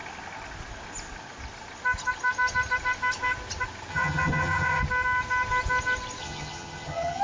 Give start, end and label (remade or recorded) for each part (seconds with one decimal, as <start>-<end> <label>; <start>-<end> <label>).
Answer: 0.0-3.9 recorded; 3.9-4.8 remade; 4.8-6.2 recorded; 6.2-7.2 remade